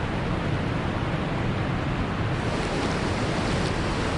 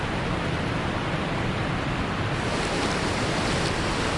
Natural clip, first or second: first